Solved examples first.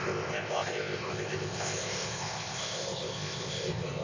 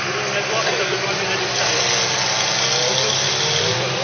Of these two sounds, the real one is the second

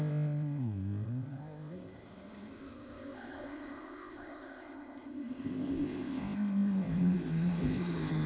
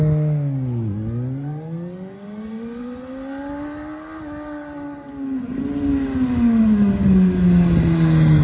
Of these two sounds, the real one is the second